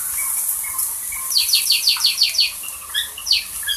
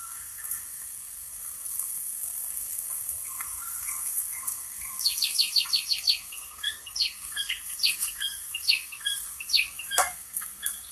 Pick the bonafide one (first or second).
first